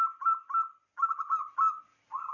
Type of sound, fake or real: real